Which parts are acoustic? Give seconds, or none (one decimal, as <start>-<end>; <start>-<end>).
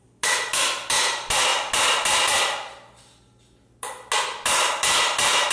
0.0-5.5